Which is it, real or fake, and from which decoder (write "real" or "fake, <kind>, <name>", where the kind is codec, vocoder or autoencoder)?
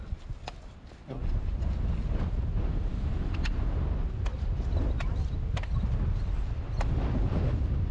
real